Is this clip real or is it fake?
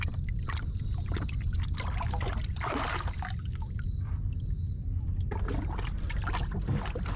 real